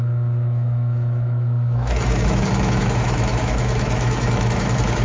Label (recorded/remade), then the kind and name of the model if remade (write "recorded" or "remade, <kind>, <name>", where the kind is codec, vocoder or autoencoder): remade, autoencoder, DAC-VAE